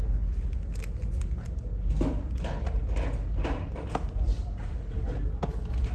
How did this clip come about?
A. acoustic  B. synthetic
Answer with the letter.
A